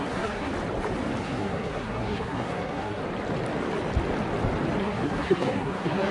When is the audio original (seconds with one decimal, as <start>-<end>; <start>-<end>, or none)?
0.5-1.2; 3.0-4.8